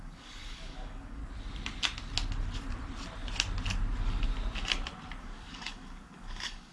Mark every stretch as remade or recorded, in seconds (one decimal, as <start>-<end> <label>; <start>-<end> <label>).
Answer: 0.0-1.2 remade; 1.2-5.2 recorded; 5.2-6.7 remade